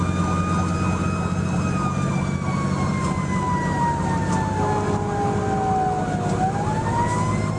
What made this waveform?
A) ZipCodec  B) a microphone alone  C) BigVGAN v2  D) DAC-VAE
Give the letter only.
B